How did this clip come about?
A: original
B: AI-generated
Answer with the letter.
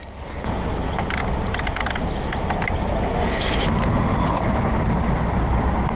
A